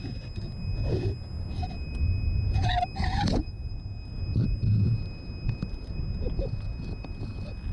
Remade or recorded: recorded